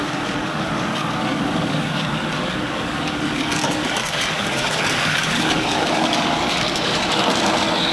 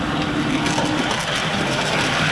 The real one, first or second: second